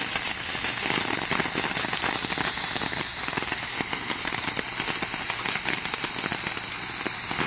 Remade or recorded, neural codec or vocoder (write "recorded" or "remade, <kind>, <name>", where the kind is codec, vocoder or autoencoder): recorded